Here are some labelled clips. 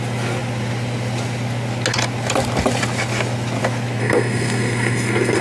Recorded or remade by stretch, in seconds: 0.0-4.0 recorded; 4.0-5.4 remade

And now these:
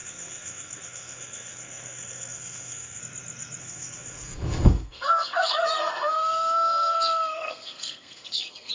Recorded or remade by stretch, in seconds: 0.0-3.0 remade; 3.0-3.6 recorded; 3.6-8.7 remade

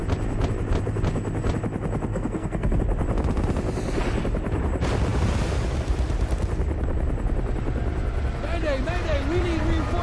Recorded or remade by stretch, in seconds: 0.0-2.1 recorded; 2.1-2.8 remade; 2.8-10.0 recorded

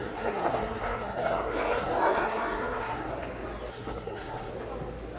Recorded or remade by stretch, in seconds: 0.0-3.1 remade; 3.1-3.7 recorded; 3.7-4.5 remade; 4.5-5.2 recorded